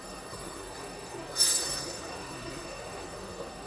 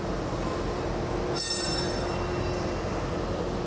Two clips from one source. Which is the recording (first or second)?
second